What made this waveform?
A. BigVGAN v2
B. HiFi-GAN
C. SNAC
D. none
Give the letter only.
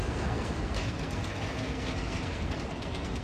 C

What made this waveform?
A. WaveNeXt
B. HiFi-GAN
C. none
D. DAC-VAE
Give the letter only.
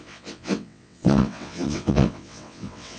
A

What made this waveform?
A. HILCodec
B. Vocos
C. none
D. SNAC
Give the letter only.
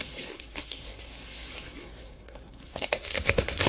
D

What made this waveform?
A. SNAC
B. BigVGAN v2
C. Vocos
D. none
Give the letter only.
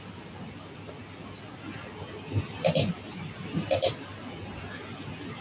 D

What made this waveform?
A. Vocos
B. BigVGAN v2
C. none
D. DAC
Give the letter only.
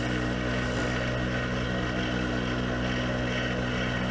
C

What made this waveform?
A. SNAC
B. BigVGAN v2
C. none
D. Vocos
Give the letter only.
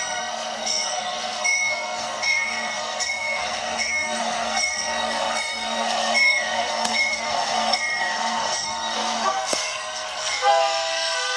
A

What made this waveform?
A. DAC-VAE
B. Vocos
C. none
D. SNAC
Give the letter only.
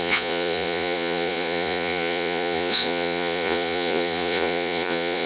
B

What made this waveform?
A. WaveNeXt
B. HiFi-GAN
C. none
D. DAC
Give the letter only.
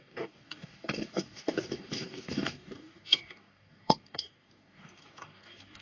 D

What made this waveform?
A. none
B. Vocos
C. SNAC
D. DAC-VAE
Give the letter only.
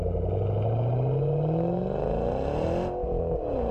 A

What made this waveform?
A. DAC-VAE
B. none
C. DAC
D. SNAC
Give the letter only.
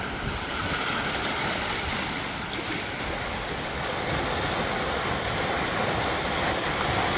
B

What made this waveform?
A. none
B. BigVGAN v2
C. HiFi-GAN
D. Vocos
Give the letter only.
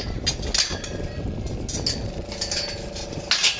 A